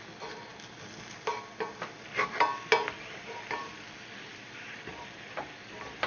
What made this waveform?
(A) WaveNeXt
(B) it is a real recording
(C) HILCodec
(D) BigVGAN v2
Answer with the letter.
B